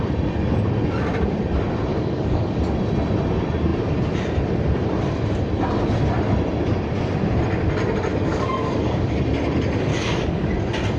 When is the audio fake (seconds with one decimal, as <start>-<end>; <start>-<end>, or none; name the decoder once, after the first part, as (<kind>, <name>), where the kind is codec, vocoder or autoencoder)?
1.9-2.6 (codec, DAC); 8.1-9.1; 9.9-10.5